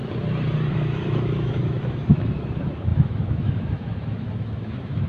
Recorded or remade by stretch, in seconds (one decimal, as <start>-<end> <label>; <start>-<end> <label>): 0.0-0.7 recorded; 0.7-5.1 remade